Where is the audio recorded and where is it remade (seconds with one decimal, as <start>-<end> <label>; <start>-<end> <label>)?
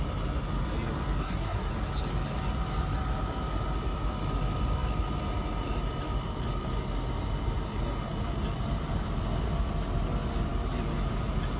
0.0-1.2 recorded; 1.2-1.7 remade; 1.7-11.6 recorded